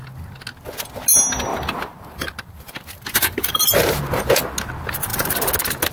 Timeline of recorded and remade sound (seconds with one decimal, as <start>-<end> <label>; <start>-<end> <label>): 0.0-1.5 recorded; 1.5-4.2 remade; 4.2-5.9 recorded